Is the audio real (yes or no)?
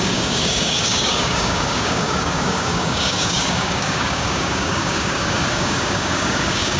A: no